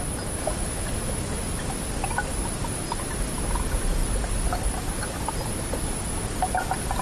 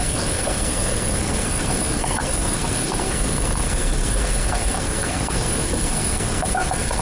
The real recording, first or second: first